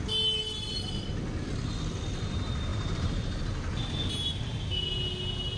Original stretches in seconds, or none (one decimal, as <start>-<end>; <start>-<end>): 0.0-2.7; 3.4-5.6